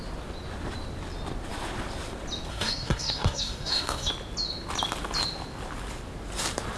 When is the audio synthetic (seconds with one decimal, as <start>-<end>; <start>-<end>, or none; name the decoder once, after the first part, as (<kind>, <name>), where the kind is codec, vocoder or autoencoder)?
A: 2.5-4.1 (codec, SNAC)